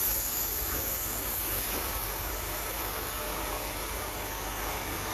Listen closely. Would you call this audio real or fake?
fake